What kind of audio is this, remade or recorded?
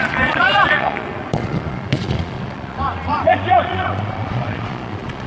remade